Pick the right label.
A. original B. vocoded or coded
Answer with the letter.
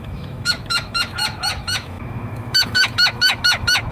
B